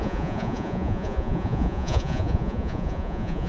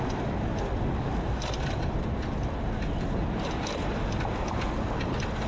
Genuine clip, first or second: second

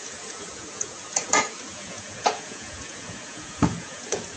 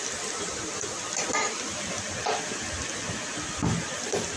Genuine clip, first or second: second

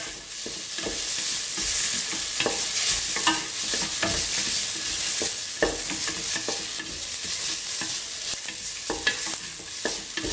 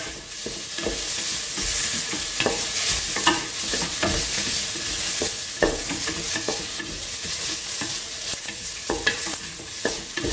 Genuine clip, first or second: first